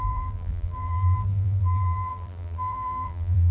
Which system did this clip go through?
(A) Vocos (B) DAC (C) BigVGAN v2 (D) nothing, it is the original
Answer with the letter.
C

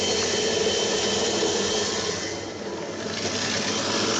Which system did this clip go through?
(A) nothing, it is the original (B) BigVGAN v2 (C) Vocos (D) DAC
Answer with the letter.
A